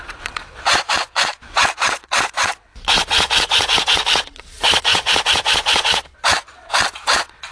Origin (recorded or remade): remade